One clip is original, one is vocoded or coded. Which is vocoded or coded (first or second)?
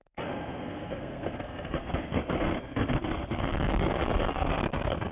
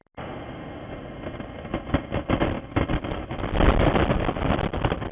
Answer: first